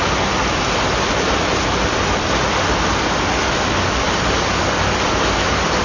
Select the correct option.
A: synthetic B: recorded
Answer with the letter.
B